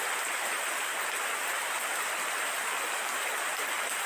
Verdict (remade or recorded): recorded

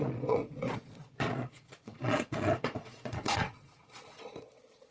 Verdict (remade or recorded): remade